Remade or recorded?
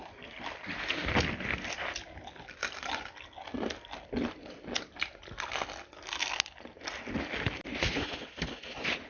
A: recorded